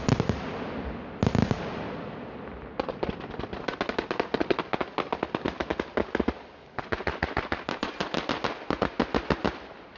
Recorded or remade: recorded